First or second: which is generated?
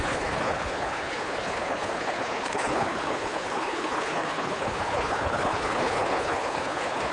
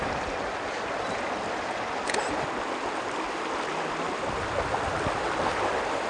first